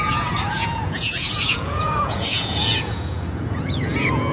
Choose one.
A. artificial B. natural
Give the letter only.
A